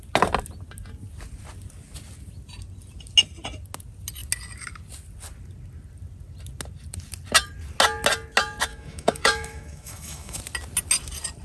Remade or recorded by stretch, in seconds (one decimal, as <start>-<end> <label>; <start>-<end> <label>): 0.0-8.7 recorded; 8.7-10.4 remade; 10.4-11.4 recorded